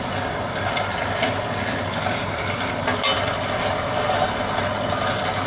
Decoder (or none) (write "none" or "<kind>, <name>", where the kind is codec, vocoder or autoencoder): none